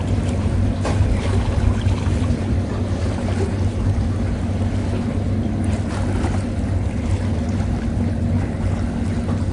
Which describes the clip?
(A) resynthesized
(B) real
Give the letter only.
B